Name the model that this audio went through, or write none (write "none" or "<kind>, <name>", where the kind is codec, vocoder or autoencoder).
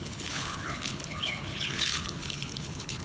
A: codec, HILCodec